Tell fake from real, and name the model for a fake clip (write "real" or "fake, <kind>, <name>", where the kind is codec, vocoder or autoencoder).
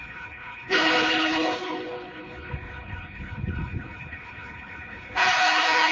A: fake, codec, HILCodec